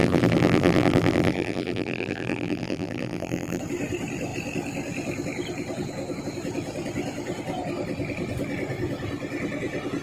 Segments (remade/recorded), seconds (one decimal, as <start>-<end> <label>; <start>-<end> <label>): 0.0-3.6 remade; 3.6-10.0 recorded